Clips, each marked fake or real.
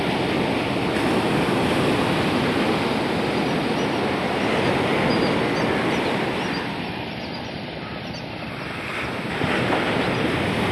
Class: real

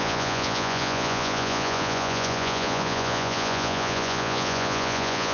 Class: fake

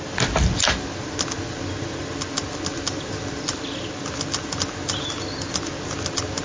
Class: real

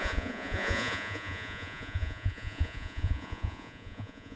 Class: fake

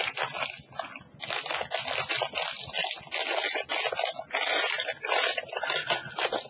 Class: real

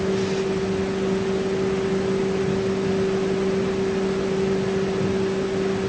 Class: real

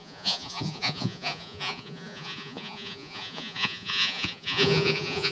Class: fake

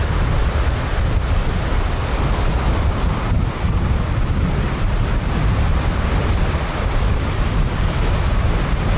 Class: real